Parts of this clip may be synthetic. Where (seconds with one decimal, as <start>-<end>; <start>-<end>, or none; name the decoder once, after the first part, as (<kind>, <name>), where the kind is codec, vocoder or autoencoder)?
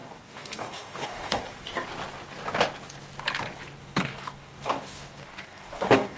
0.0-1.4 (codec, DAC); 3.8-6.2